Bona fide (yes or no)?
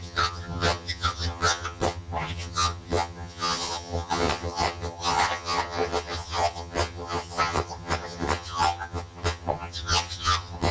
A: no